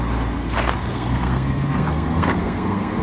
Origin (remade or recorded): remade